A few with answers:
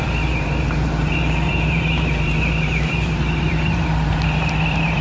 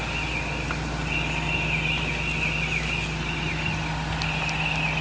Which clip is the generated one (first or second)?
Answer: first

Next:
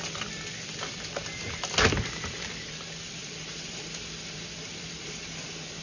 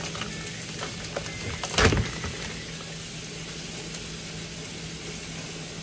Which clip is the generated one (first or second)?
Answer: first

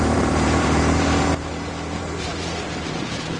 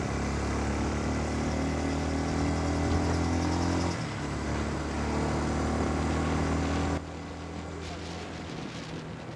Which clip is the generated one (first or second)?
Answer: first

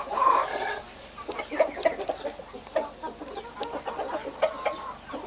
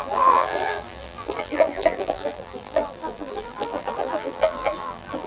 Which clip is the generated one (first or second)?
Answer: second